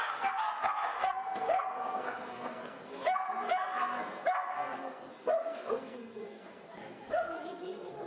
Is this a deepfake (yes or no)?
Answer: yes